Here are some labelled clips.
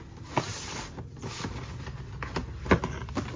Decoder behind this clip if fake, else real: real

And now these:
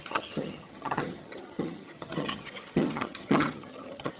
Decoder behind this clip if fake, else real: fake, vocoder, HiFi-GAN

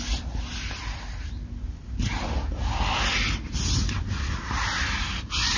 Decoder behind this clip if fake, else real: real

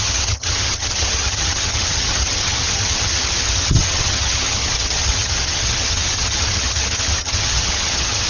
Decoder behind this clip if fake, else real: fake, vocoder, HiFi-GAN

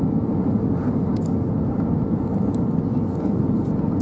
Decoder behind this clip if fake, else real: real